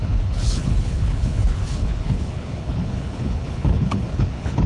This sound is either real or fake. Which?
fake